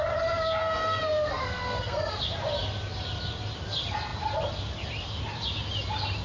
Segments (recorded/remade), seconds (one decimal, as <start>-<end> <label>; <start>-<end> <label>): 0.0-0.6 recorded; 0.6-2.2 remade; 2.2-6.2 recorded